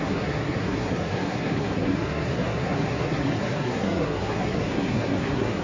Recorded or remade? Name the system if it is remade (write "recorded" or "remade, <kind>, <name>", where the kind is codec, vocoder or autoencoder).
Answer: remade, codec, SNAC